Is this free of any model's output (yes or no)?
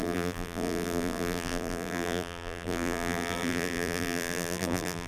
no